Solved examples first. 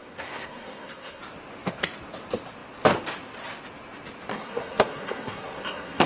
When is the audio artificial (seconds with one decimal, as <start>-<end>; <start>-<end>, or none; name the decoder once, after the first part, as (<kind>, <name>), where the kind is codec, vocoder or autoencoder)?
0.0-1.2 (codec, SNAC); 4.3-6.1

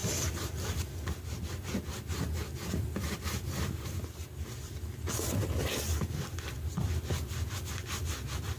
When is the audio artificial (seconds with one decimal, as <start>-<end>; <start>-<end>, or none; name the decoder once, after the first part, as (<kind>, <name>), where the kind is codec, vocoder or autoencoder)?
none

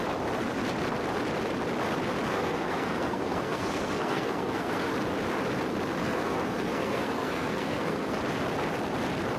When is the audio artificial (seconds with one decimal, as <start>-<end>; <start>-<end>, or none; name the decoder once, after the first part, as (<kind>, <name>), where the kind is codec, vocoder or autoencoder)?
2.3-4.9 (codec, SNAC); 6.0-8.2